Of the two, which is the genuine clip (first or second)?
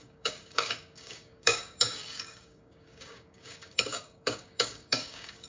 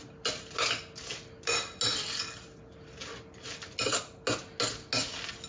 second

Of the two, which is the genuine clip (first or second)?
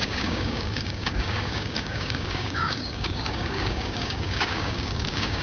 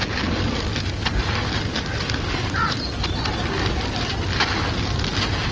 second